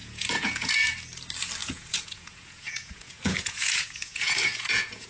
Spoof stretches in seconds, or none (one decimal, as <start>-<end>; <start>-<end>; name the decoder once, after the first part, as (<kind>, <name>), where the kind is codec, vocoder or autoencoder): 0.0-0.7 (vocoder, Vocos); 1.6-5.1